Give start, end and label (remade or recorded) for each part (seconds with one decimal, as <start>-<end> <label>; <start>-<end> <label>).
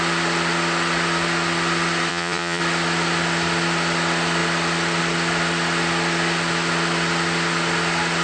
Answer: 0.0-2.1 recorded; 2.1-2.6 remade; 2.6-8.2 recorded